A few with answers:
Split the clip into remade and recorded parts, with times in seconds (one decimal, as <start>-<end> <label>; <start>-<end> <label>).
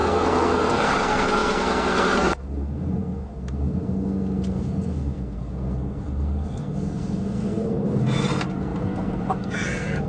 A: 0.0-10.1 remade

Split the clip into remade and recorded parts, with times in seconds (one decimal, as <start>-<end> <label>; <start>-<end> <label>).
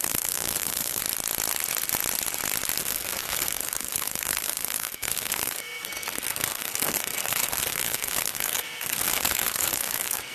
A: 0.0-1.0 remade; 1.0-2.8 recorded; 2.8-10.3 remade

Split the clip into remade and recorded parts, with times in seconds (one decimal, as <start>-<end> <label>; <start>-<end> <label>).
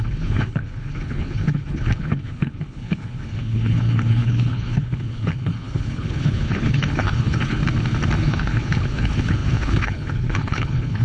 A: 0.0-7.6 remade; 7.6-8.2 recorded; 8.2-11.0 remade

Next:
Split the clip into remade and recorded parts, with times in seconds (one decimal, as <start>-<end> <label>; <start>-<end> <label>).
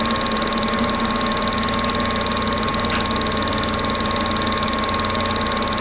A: 0.0-5.8 recorded